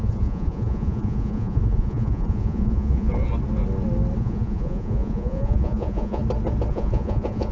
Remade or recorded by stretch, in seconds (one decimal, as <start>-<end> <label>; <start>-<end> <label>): 0.0-3.1 remade; 3.1-4.2 recorded; 4.2-6.2 remade; 6.2-6.7 recorded; 6.7-7.5 remade